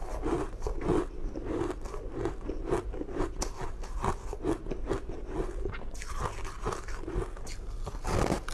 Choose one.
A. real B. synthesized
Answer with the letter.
A